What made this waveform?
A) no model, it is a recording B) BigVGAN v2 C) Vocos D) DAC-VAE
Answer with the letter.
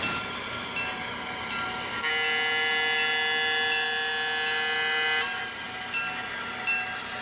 A